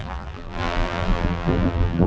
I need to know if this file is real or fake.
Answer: fake